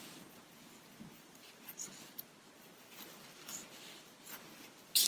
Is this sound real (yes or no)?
yes